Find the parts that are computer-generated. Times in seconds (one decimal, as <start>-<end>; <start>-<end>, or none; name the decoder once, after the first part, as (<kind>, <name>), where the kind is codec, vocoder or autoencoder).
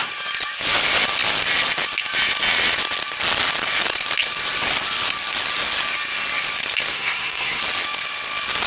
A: 6.9-7.6 (codec, SNAC)